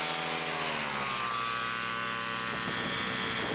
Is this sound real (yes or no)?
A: yes